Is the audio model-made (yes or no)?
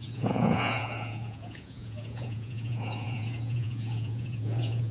yes